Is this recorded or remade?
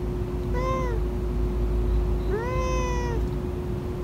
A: recorded